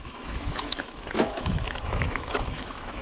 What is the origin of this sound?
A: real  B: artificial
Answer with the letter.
B